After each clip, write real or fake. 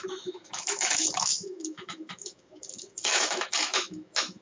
fake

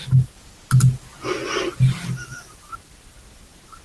real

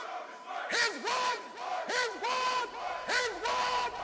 fake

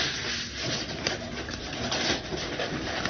real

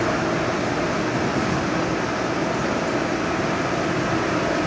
real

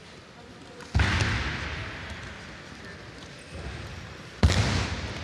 real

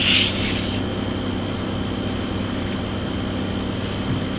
real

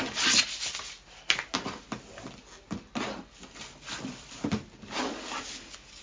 real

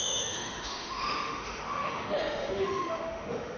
fake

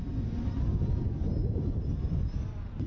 real